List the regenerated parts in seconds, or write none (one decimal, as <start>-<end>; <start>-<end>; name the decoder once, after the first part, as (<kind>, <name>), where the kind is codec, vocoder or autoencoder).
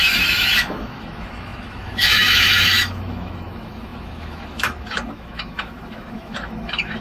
0.0-7.0 (autoencoder, DAC-VAE)